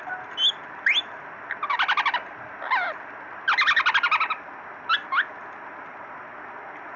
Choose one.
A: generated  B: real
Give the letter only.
B